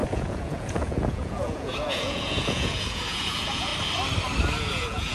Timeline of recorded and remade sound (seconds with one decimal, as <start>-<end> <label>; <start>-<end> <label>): 0.0-3.7 remade; 3.7-4.6 recorded; 4.6-5.1 remade